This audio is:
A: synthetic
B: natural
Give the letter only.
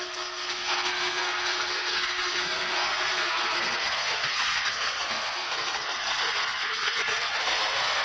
A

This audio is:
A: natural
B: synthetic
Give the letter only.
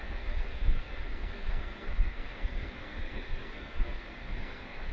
B